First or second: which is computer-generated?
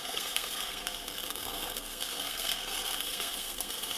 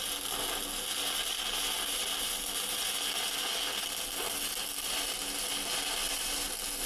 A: first